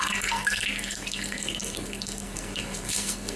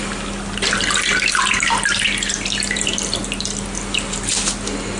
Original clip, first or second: second